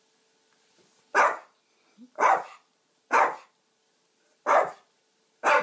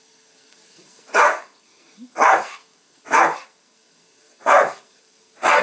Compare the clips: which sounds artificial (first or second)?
second